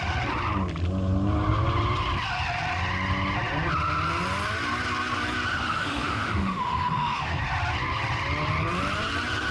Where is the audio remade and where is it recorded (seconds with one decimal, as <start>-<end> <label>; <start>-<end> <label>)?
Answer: 0.0-5.5 recorded; 5.5-7.4 remade; 7.4-9.5 recorded